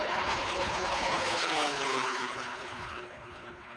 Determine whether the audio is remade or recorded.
remade